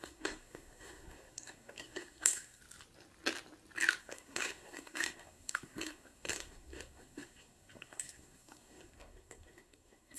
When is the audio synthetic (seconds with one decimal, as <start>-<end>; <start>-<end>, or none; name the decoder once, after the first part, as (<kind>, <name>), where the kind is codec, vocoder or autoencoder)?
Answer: 0.0-2.6 (codec, SNAC); 4.0-10.2